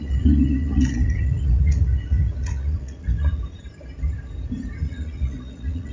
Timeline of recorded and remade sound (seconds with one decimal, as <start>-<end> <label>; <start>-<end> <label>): 0.0-3.4 remade; 3.4-4.8 recorded; 4.8-5.9 remade